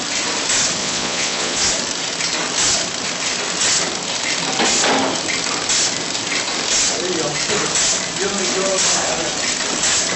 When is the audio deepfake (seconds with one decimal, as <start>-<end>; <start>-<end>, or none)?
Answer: 0.8-1.6

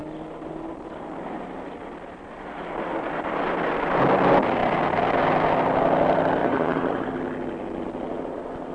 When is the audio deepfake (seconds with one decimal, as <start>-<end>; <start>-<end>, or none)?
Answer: 6.4-7.1

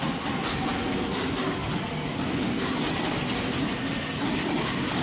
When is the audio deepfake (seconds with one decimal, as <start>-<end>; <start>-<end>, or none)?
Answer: none

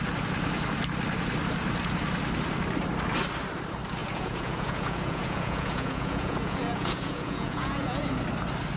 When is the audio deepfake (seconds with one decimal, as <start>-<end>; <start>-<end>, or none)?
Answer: 4.0-8.0